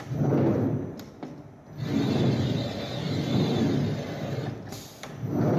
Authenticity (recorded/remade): recorded